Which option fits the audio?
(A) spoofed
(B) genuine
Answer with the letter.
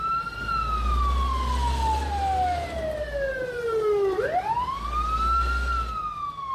B